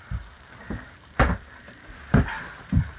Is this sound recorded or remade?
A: remade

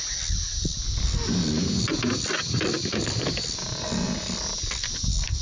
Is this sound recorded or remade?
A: recorded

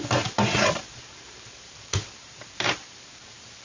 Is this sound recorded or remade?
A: remade